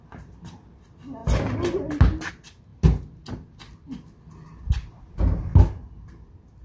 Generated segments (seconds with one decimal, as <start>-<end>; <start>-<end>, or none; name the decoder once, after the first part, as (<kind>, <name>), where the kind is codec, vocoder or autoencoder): none